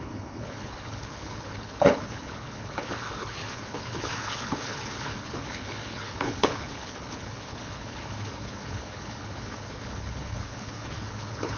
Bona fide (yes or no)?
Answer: no